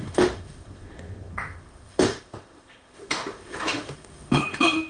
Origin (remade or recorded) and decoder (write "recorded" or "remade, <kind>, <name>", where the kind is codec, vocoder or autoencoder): remade, autoencoder, DAC-VAE